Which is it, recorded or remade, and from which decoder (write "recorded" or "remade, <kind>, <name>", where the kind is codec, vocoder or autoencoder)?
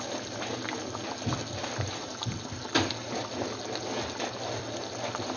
recorded